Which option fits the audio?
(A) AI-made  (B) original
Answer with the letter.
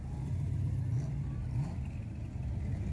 B